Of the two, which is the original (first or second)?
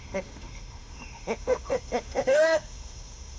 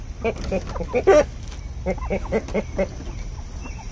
second